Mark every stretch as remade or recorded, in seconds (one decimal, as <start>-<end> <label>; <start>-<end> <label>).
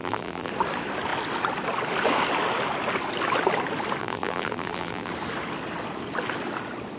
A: 0.0-0.5 remade; 0.5-4.0 recorded; 4.0-5.1 remade; 5.1-7.0 recorded